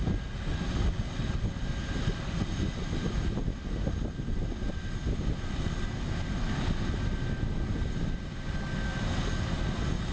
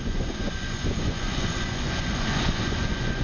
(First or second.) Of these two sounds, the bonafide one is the first